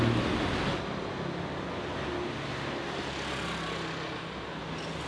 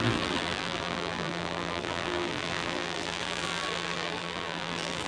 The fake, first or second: second